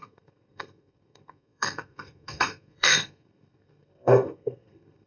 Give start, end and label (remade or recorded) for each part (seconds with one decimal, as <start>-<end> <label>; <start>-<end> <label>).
0.0-5.1 remade